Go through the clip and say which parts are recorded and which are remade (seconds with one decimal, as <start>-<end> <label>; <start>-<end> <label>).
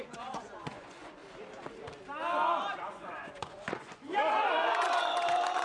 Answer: 0.0-1.2 remade; 1.2-2.8 recorded; 2.8-5.6 remade